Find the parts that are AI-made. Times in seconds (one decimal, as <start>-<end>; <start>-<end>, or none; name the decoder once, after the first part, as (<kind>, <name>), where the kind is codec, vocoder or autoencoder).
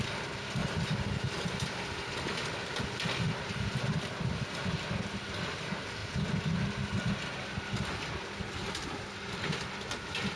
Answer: none